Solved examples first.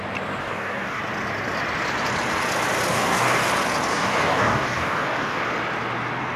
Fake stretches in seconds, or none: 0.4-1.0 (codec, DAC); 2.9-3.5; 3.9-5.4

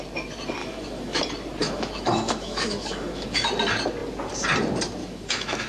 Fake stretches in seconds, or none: 0.6-1.2 (autoencoder, DAC-VAE); 1.6-3.5; 5.0-5.7

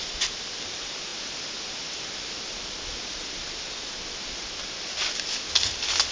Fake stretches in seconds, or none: none

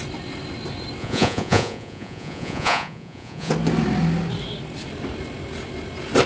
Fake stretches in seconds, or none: 1.0-3.5 (vocoder, Vocos)

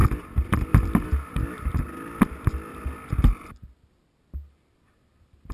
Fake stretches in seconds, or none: 0.0-0.7 (vocoder, BigVGAN v2)

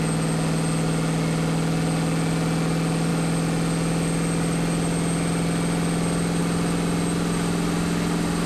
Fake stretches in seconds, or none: none